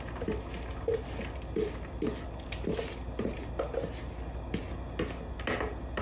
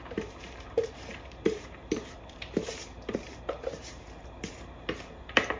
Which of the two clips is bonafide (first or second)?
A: first